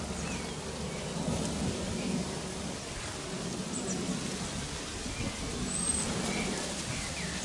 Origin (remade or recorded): recorded